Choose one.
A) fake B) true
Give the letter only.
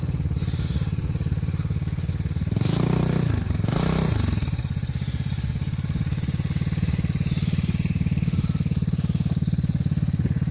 B